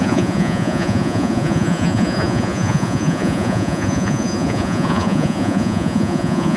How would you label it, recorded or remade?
remade